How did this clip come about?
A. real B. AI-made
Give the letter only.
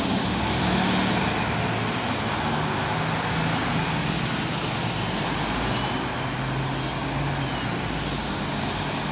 A